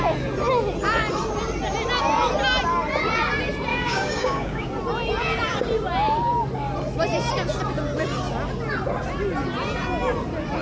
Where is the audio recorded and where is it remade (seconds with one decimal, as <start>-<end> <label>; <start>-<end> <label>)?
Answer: 0.0-3.7 recorded; 3.7-4.7 remade; 4.7-10.6 recorded